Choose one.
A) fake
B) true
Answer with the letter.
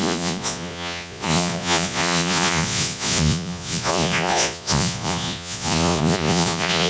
A